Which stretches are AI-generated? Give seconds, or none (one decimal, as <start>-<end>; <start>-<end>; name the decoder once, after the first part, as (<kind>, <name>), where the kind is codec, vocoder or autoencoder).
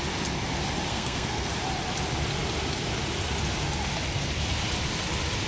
0.9-1.5 (codec, SNAC)